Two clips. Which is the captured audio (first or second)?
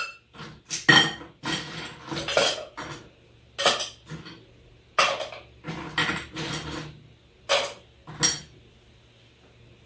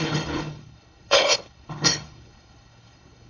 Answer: first